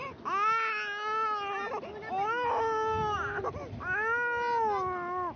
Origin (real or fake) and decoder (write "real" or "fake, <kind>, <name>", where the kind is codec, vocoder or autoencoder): real